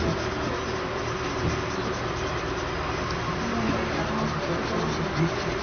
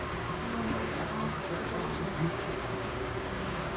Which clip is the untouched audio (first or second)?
first